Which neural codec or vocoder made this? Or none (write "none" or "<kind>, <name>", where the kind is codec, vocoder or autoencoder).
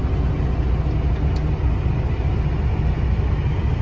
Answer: none